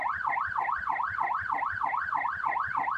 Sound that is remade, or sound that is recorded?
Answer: recorded